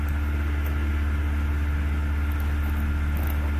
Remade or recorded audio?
recorded